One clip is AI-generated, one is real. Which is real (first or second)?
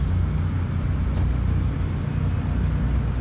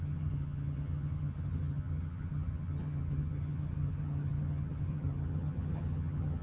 first